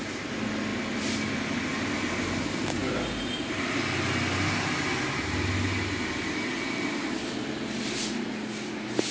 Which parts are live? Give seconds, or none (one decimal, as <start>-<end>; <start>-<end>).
0.0-9.1